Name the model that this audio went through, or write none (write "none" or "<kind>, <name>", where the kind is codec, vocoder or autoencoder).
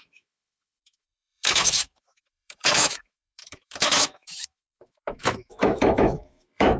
autoencoder, DAC-VAE